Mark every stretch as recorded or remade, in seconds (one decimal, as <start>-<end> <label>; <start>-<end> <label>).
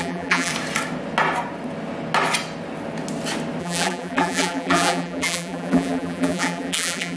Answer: 0.0-0.5 remade; 0.5-3.6 recorded; 3.6-7.2 remade